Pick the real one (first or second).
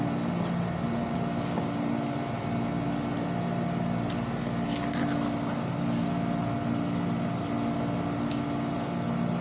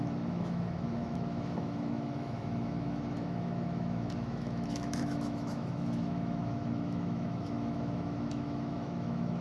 first